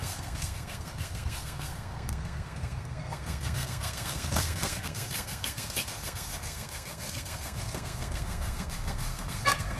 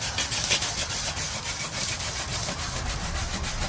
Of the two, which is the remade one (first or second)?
first